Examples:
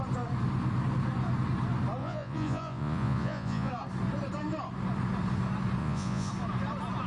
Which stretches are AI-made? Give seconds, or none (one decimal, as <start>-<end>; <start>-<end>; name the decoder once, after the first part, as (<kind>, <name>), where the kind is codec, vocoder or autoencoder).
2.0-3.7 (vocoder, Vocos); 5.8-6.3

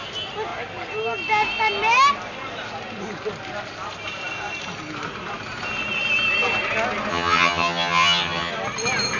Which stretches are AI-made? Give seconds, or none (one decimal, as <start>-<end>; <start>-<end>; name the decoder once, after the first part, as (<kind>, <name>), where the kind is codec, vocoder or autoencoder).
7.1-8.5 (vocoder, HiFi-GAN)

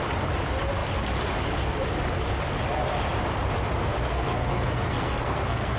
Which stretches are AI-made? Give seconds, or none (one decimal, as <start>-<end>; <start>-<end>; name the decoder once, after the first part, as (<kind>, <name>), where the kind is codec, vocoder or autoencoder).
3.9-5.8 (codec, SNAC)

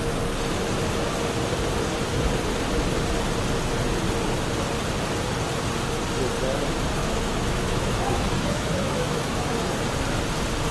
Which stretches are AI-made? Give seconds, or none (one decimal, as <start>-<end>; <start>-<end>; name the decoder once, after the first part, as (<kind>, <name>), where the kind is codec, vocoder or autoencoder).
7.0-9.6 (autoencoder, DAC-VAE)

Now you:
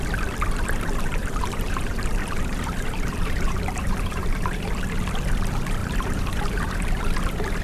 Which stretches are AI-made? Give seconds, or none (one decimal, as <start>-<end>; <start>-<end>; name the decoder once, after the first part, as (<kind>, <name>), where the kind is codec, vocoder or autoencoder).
1.2-4.7 (vocoder, BigVGAN v2); 5.8-7.1

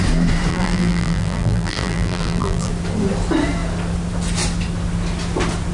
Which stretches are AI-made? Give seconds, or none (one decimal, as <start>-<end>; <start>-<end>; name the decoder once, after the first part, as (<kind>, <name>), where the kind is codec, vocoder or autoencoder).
0.5-2.7 (vocoder, BigVGAN v2)

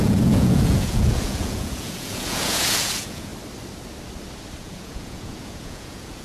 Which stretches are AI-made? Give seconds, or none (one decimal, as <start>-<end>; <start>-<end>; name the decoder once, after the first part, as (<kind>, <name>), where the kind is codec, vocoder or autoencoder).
0.0-3.3 (vocoder, Vocos); 4.6-6.2